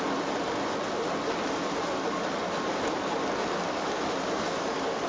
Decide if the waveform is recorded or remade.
recorded